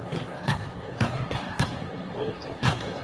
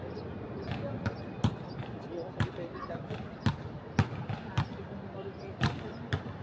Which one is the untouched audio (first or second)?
second